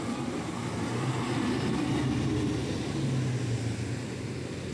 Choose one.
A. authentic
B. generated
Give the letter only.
A